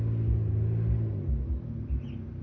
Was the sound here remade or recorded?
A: recorded